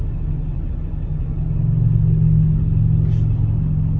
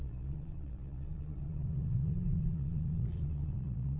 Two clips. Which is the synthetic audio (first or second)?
second